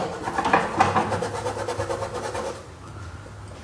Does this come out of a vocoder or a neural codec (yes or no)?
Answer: no